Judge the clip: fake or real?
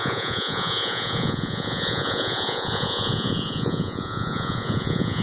fake